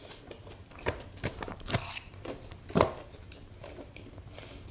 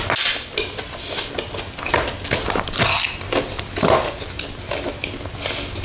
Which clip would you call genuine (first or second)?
second